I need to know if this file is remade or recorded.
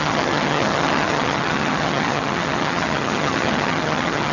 remade